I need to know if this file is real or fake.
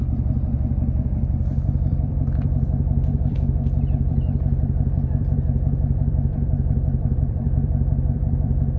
fake